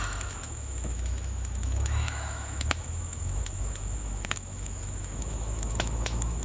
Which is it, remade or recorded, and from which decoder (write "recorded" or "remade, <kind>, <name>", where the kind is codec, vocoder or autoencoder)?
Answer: remade, autoencoder, DAC-VAE